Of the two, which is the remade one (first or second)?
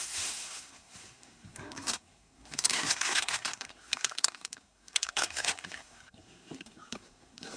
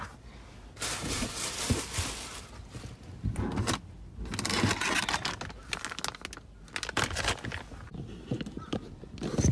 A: first